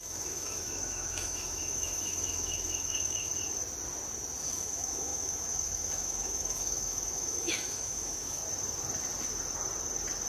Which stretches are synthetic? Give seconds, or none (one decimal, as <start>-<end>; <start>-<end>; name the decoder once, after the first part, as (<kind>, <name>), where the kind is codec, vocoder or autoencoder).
0.0-3.3 (autoencoder, DAC-VAE); 4.4-8.4